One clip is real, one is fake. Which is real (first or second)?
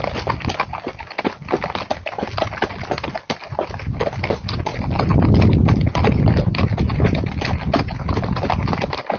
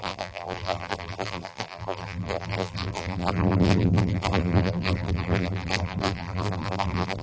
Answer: first